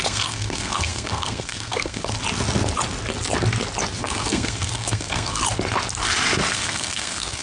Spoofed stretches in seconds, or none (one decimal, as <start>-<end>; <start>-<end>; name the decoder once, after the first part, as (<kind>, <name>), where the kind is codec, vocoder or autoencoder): 0.0-2.0 (codec, SNAC); 4.0-5.4; 6.5-7.4